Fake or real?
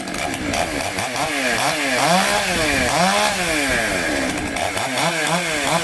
real